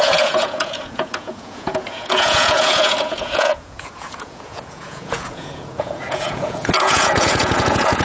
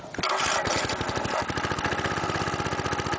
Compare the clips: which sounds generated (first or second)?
first